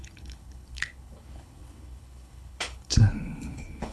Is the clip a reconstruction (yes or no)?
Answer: yes